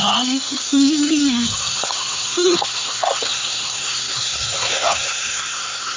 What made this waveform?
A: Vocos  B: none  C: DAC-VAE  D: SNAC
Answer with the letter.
D